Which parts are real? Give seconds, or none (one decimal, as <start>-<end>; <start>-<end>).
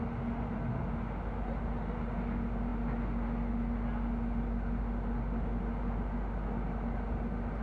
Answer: 0.0-7.6